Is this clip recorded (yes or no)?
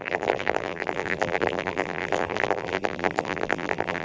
no